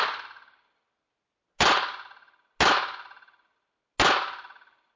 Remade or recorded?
recorded